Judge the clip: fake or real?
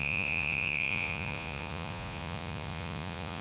fake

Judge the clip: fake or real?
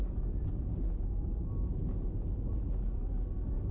real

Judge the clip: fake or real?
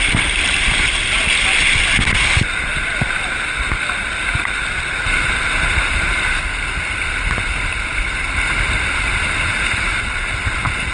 real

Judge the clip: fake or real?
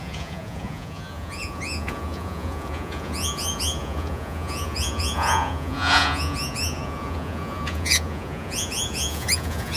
fake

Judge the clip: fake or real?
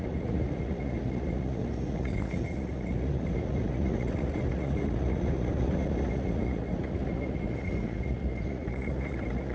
fake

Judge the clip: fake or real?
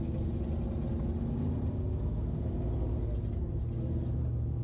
real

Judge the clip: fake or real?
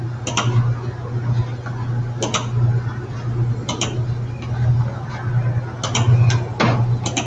real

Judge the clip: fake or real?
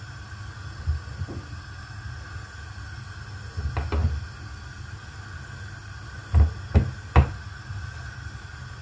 real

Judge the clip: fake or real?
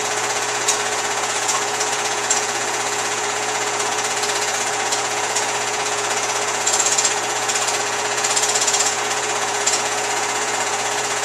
fake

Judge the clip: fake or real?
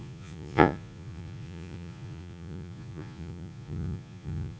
fake